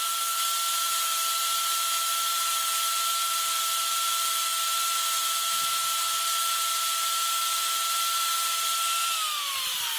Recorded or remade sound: recorded